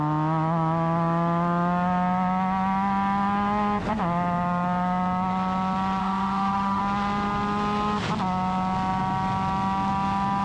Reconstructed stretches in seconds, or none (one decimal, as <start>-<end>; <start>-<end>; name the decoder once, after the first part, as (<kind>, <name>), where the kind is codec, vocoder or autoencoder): 6.0-6.8 (autoencoder, DAC-VAE)